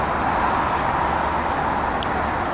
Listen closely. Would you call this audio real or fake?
real